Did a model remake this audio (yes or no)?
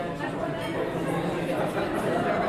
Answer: no